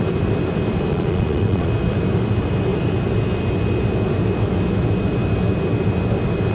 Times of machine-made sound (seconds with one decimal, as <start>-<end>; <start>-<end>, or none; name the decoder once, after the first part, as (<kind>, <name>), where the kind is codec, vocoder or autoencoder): 0.9-1.7 (vocoder, Vocos)